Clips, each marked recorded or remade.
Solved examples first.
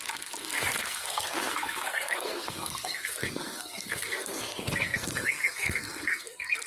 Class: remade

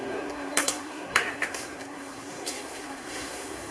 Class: remade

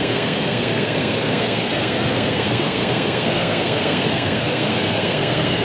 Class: remade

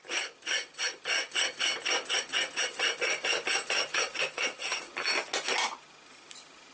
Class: recorded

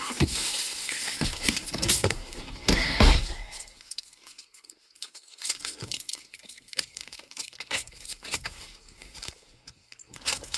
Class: remade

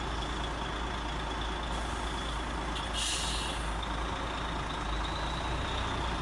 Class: recorded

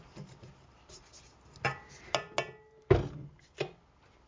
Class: recorded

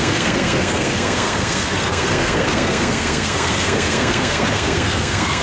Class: remade